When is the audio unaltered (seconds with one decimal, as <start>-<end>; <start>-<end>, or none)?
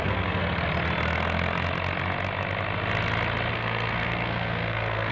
0.4-3.5